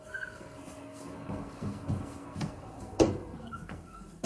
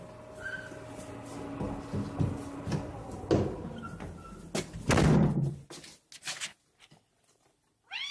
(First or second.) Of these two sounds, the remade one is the first